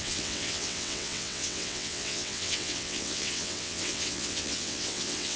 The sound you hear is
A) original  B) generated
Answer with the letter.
B